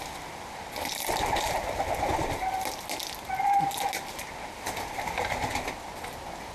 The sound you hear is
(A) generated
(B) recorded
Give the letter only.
B